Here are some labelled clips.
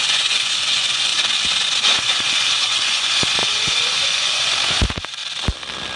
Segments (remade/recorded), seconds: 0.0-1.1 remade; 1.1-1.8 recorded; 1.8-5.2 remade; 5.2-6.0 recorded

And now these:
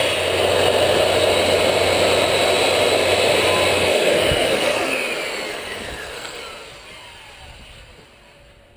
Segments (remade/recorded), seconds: 0.0-3.7 recorded; 3.7-4.9 remade; 4.9-5.5 recorded; 5.5-6.4 remade; 6.4-8.8 recorded

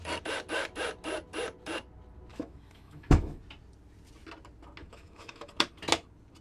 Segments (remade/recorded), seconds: 0.0-2.3 recorded; 2.3-3.4 remade; 3.4-4.8 recorded; 4.8-5.5 remade; 5.5-6.4 recorded

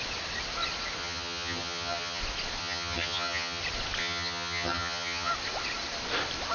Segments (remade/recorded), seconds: 0.0-1.0 recorded; 1.0-2.2 remade; 2.2-2.6 recorded; 2.6-3.6 remade; 3.6-4.0 recorded; 4.0-5.3 remade; 5.3-6.5 recorded